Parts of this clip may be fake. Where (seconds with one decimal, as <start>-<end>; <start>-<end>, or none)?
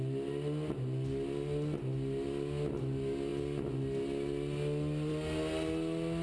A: none